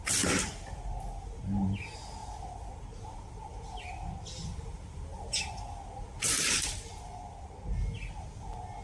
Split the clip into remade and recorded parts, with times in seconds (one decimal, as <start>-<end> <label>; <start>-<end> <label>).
0.0-8.8 recorded